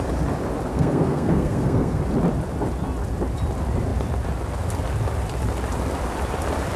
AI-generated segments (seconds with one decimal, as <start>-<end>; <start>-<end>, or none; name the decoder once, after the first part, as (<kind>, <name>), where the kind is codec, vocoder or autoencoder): 0.7-2.0 (codec, SNAC)